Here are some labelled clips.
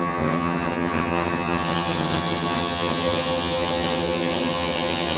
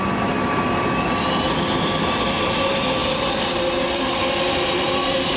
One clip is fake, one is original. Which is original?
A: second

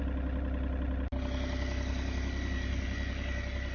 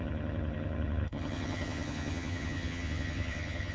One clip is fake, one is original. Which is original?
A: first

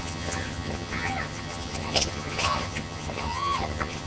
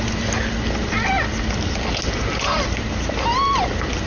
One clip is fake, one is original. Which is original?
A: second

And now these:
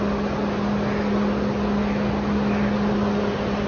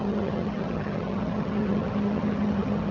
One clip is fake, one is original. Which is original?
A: first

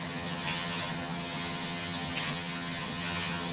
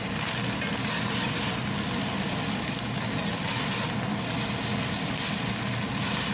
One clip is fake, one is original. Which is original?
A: second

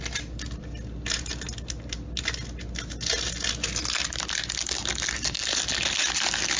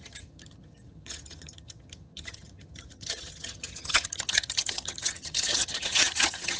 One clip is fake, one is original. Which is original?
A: first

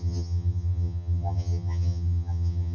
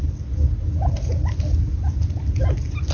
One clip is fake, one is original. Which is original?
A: second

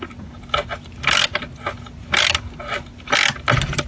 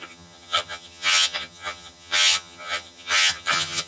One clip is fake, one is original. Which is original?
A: first